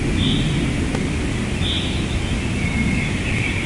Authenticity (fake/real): real